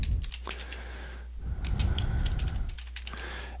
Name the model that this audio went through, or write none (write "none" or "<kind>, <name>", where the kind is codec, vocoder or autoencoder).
none